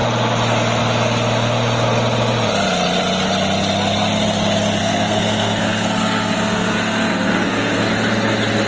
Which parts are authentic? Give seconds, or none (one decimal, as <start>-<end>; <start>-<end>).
0.0-4.8; 7.9-8.7